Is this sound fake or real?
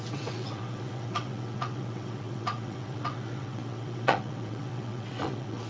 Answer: fake